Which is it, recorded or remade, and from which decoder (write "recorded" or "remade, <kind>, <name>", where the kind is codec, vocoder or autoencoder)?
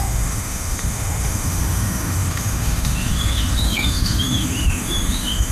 remade, autoencoder, DAC-VAE